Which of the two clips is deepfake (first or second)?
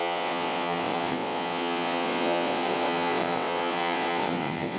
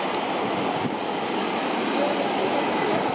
first